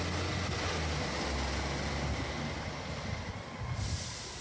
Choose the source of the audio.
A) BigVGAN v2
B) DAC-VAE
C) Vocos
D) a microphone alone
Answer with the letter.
D